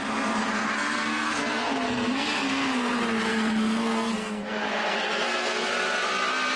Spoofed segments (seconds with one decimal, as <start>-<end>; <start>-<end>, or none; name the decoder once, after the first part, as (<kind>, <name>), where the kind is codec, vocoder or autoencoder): 0.4-2.9 (codec, SNAC); 3.3-5.7